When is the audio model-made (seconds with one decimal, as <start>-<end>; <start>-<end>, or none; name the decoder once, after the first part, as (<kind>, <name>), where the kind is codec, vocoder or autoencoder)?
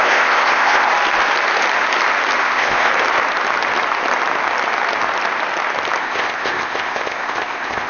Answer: 0.0-0.9 (codec, ZipCodec); 2.4-2.9; 6.0-7.9